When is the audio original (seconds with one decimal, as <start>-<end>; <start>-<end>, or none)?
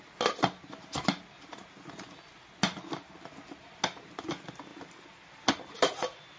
0.0-6.4